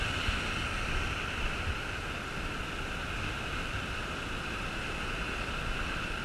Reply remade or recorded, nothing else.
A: recorded